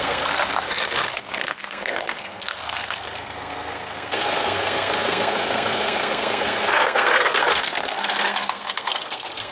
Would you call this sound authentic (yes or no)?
no